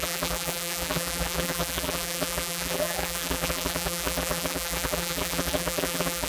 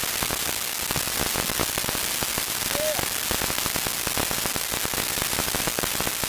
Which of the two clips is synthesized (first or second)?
first